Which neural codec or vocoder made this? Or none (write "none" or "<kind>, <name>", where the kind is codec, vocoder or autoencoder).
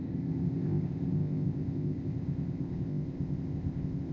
codec, ZipCodec